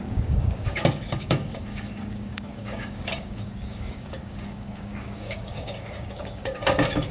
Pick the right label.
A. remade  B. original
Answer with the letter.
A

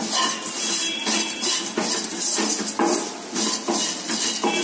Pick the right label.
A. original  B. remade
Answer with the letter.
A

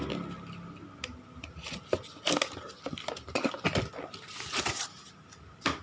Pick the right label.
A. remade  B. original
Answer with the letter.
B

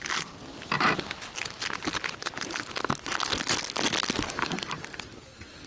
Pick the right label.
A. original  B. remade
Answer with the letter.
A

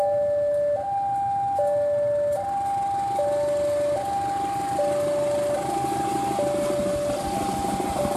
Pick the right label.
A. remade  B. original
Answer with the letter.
B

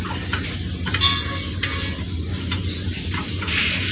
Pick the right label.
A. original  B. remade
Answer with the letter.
A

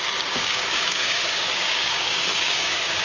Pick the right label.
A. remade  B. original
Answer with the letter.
A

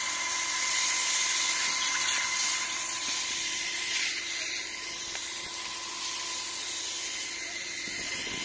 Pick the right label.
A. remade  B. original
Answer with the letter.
B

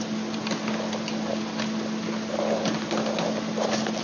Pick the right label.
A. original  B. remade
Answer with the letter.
A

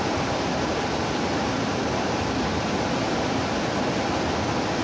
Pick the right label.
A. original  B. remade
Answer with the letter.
A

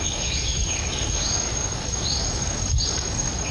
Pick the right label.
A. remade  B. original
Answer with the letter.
A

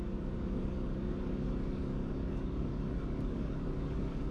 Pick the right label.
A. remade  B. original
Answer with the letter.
A